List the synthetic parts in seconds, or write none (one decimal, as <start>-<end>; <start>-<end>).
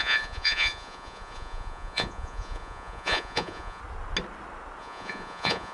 0.0-3.8; 4.8-5.7